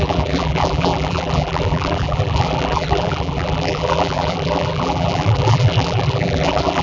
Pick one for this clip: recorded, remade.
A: remade